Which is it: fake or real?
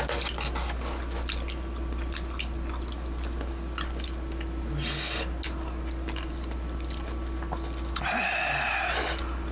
real